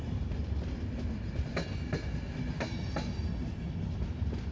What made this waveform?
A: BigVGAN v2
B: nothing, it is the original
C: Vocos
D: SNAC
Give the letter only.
B